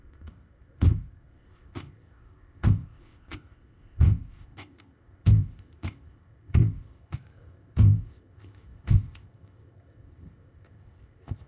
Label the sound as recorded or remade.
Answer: remade